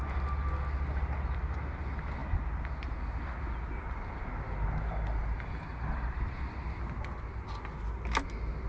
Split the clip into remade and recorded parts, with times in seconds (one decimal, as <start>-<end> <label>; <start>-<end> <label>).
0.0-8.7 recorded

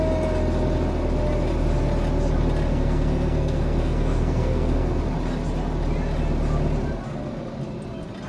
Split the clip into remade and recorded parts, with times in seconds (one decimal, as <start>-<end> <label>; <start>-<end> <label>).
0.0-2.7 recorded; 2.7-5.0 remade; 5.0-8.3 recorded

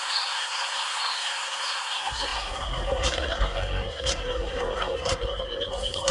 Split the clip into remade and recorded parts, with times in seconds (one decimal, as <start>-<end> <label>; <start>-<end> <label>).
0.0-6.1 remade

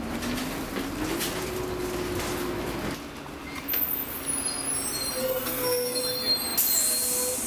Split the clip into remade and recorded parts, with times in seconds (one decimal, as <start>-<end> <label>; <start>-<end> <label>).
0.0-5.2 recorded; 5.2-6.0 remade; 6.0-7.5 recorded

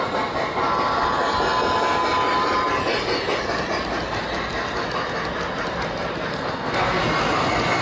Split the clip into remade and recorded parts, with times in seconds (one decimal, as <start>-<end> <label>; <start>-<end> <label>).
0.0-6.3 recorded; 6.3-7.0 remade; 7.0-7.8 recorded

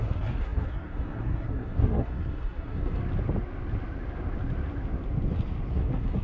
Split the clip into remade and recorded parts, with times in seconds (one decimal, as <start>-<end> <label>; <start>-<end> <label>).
0.0-3.0 remade; 3.0-5.7 recorded; 5.7-6.2 remade